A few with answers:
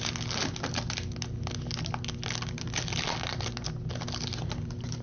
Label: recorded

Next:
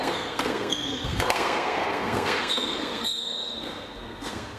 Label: remade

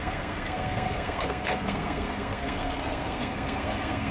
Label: remade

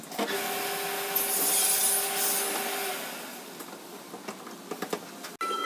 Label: recorded